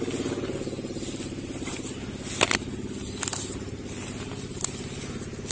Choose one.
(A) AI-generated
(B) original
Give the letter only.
B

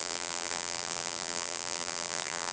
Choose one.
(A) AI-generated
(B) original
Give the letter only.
A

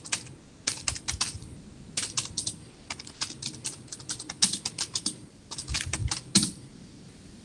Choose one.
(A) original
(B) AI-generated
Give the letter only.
A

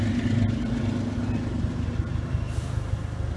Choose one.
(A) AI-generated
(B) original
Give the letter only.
B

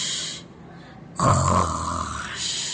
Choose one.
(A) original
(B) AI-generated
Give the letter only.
A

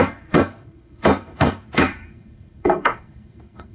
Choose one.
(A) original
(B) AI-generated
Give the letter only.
B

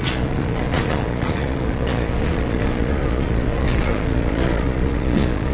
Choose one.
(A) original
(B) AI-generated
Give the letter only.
B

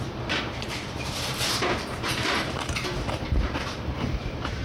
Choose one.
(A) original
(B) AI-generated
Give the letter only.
B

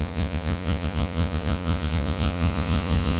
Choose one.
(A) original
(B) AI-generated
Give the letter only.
B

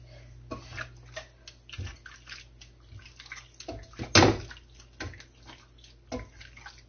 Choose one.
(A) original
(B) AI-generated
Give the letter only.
A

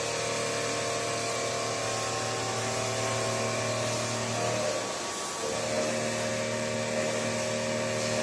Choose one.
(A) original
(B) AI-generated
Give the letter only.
A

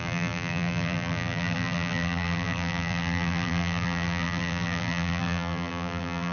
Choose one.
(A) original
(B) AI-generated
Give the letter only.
B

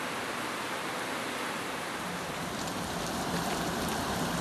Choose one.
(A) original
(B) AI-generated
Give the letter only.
B